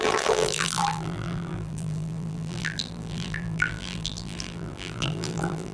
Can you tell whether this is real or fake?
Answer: fake